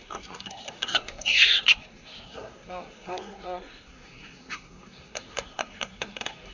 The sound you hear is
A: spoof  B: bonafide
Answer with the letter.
A